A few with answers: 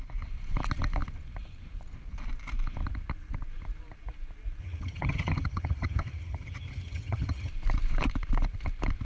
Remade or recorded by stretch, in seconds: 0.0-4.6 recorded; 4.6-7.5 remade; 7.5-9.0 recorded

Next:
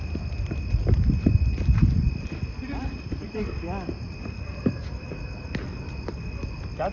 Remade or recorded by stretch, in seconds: 0.0-6.9 recorded

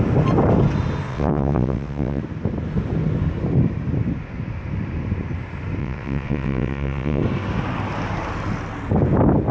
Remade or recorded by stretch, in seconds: 0.0-1.1 recorded; 1.1-2.2 remade; 2.2-5.8 recorded; 5.8-7.2 remade; 7.2-9.5 recorded

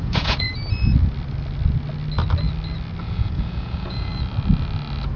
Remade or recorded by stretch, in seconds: 0.0-0.5 remade; 0.5-3.0 recorded; 3.0-4.1 remade; 4.1-5.2 recorded

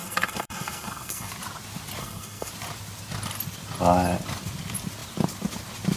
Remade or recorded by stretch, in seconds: 0.0-1.3 remade; 1.3-2.0 recorded; 2.0-2.5 remade; 2.5-6.0 recorded

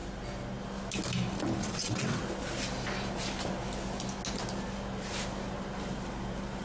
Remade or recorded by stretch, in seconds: 0.0-1.6 recorded; 1.6-2.2 remade; 2.2-6.6 recorded

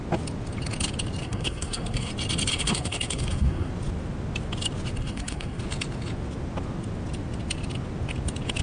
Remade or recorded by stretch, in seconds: 0.0-1.2 recorded; 1.2-2.1 remade; 2.1-2.5 recorded; 2.5-3.7 remade; 3.7-5.0 recorded; 5.0-5.6 remade; 5.6-8.6 recorded

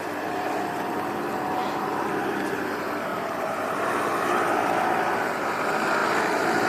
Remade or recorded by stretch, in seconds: 0.0-1.6 recorded; 1.6-2.3 remade; 2.3-3.1 recorded; 3.1-3.7 remade; 3.7-6.7 recorded